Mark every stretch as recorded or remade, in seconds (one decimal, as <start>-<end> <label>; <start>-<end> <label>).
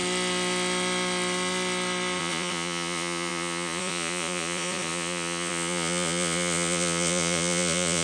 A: 0.0-2.2 recorded; 2.2-8.0 remade